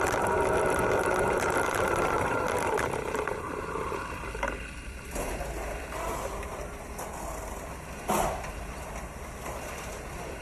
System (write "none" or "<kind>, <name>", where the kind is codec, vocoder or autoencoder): none